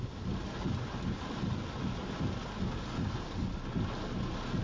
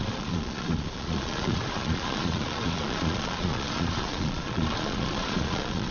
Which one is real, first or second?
first